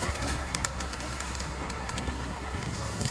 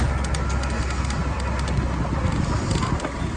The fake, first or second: first